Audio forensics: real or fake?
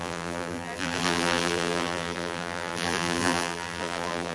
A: fake